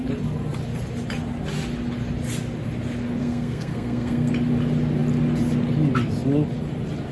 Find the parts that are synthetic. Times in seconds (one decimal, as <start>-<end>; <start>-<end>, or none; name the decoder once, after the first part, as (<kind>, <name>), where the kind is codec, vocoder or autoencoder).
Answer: 3.2-4.3 (codec, SNAC)